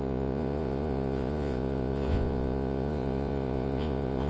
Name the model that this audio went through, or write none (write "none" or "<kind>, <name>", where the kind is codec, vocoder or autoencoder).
vocoder, Vocos